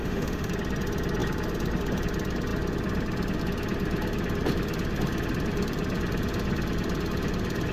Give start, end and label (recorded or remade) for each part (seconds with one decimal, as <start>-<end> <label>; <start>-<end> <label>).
0.0-0.5 remade; 0.5-7.7 recorded